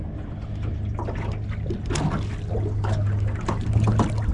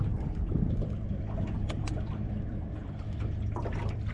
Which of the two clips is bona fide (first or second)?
first